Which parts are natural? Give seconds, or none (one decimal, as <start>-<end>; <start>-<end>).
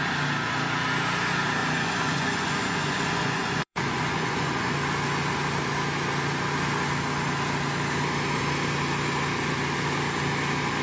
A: 0.0-1.6; 4.7-10.8